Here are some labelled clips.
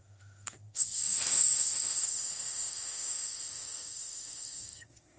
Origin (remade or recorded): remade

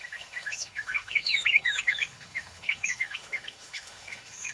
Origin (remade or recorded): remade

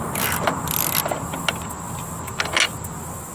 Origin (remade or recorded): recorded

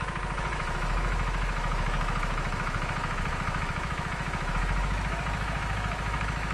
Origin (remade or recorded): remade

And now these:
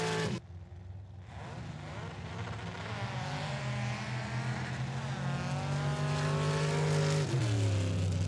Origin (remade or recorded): recorded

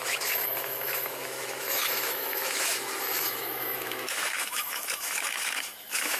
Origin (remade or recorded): remade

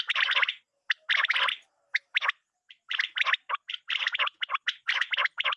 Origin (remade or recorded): recorded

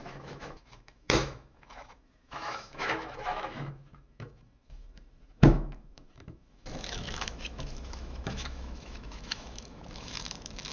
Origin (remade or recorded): remade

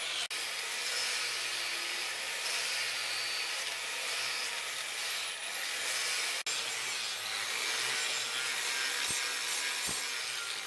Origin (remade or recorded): recorded